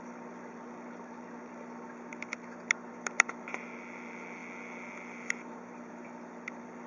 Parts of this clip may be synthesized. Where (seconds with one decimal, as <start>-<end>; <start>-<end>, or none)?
none